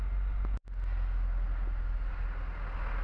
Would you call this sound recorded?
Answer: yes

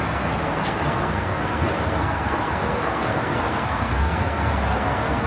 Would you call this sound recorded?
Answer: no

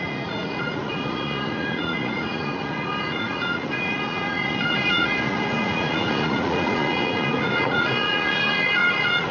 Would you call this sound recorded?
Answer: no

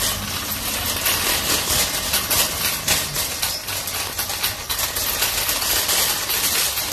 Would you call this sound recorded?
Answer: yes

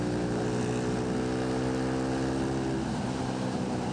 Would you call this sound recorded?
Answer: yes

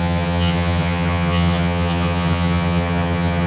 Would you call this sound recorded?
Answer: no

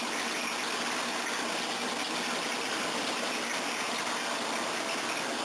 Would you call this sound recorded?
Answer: yes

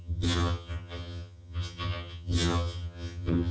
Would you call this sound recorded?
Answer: no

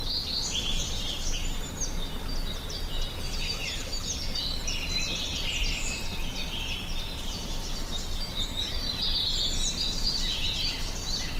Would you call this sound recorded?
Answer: yes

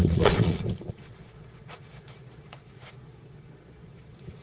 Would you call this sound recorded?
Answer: no